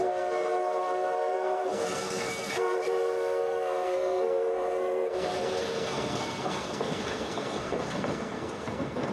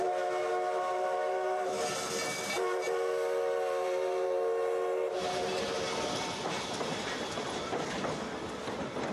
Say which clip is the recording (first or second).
second